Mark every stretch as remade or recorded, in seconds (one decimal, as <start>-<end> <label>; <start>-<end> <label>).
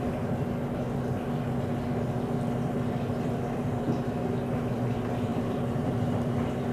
0.0-5.3 recorded; 5.3-5.9 remade; 5.9-6.7 recorded